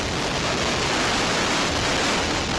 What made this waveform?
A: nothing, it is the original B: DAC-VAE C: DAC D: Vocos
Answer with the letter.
A